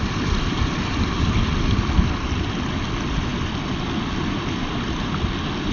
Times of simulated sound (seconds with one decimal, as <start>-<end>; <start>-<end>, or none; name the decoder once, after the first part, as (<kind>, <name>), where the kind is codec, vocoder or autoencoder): none